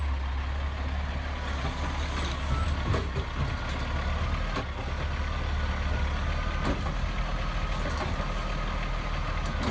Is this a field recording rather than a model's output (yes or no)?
yes